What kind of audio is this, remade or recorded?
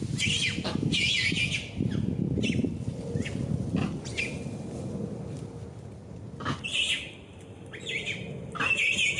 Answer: recorded